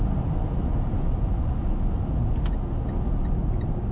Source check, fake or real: real